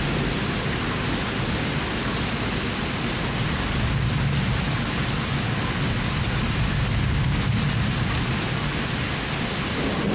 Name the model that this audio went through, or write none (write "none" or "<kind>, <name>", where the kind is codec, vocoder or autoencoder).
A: none